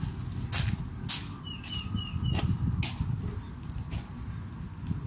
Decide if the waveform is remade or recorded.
recorded